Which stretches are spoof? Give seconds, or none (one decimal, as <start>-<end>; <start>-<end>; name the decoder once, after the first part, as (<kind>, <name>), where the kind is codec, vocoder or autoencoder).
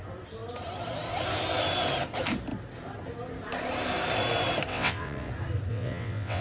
4.7-5.3 (vocoder, WaveNeXt); 5.7-6.4